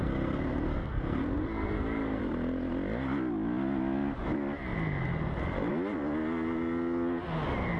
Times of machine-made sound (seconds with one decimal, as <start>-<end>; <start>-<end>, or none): 0.0-2.2